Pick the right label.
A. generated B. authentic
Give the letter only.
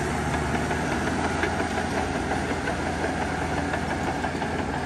B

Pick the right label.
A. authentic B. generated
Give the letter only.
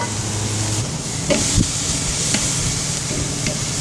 A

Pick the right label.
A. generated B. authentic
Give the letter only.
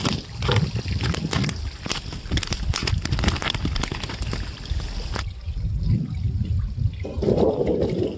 B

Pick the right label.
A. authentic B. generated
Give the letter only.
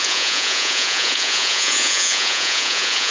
B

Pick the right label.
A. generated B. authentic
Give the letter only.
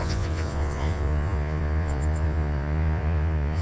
A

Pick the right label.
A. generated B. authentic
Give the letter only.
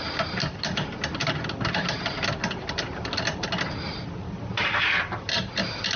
B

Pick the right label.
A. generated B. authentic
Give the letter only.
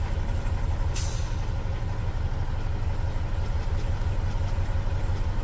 B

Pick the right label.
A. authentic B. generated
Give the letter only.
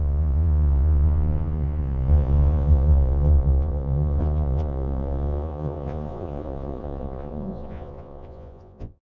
B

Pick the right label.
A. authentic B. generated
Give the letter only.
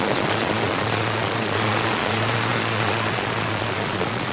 B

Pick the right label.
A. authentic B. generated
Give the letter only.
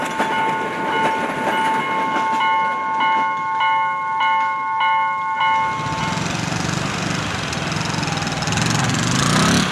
A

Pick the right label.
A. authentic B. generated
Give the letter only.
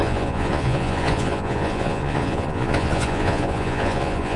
B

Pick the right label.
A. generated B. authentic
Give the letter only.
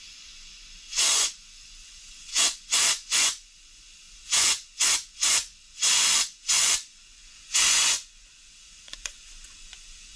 A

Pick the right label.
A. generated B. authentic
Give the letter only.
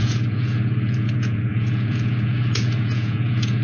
A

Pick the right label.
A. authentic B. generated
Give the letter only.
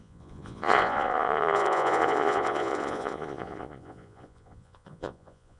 B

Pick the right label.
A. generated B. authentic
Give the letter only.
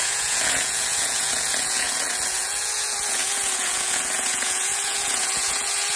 A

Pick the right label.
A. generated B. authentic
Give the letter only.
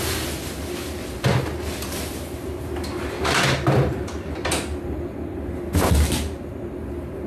B